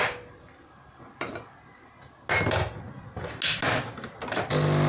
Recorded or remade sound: recorded